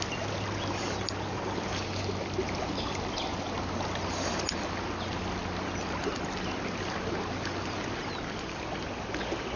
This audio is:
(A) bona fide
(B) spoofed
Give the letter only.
A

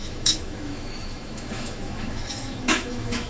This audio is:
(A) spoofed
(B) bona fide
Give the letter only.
A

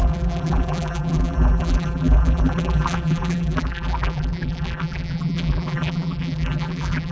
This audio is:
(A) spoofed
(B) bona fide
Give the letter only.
A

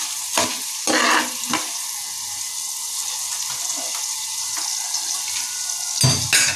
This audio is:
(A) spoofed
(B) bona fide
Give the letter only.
B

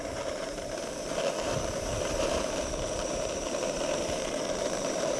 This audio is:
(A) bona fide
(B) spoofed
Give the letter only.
B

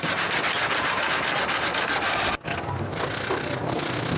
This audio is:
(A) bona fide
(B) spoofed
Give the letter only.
A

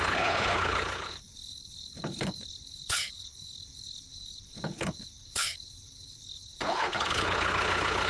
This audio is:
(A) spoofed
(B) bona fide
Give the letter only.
A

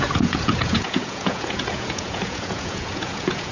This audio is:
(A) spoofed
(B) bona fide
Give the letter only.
A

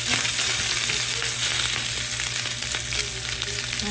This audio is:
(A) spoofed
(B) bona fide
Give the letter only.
B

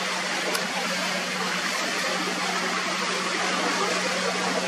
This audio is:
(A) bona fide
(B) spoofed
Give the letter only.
A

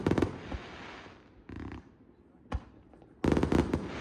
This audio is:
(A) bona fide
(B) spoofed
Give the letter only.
A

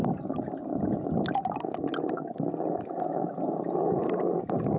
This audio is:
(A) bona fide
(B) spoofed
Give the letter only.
A